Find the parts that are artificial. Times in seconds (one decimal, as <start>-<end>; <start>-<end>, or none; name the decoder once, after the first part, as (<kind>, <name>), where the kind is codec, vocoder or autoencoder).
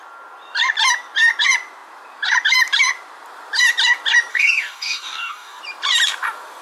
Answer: 4.3-5.6 (codec, DAC)